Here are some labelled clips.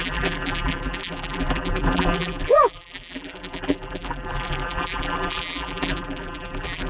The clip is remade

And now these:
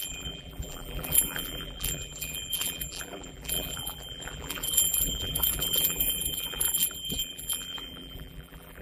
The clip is remade